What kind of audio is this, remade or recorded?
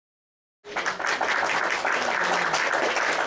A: recorded